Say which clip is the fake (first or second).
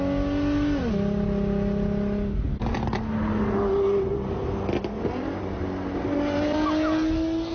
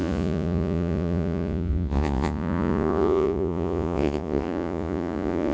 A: second